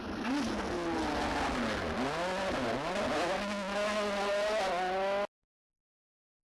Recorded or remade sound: recorded